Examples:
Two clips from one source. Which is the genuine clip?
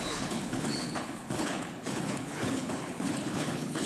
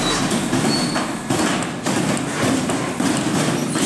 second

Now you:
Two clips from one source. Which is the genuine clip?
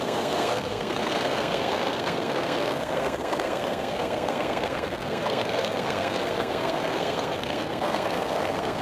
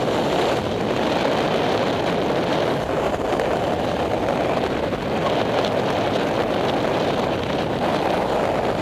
second